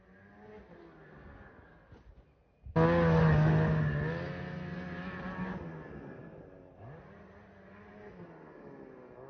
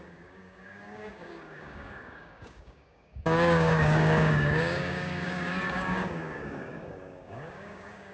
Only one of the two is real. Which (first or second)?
first